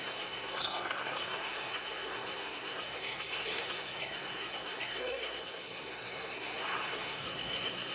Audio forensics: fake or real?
fake